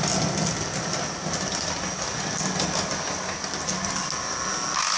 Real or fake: real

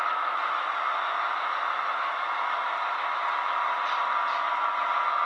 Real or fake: real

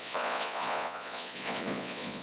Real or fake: fake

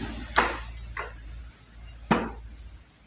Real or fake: real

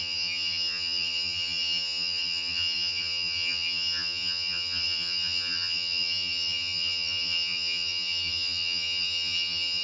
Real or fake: fake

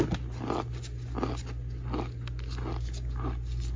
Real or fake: real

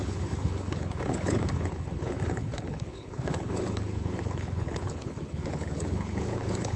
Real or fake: fake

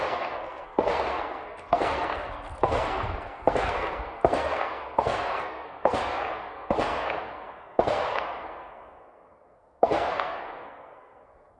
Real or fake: fake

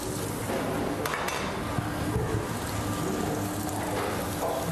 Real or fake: real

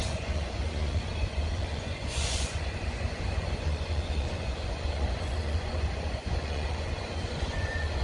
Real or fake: fake